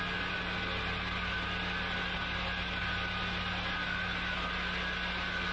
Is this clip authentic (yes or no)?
yes